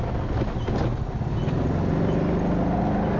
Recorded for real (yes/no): yes